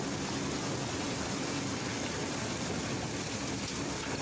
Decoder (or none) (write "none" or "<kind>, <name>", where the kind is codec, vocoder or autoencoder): none